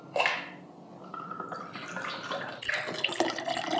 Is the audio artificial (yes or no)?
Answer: no